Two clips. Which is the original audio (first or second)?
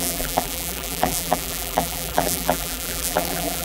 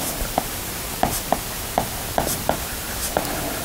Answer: second